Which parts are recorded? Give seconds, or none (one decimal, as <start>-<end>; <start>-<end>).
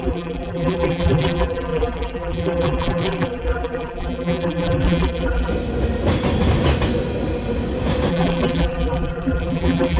5.5-8.1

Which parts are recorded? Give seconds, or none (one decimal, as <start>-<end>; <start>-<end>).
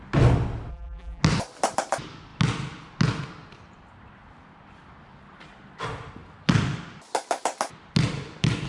0.0-0.7; 1.2-8.7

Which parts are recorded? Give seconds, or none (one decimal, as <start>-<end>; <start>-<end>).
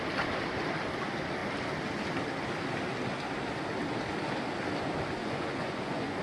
0.0-5.2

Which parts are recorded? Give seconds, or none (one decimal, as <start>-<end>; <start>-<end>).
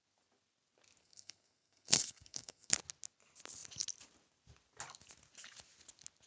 0.0-1.0; 2.7-6.3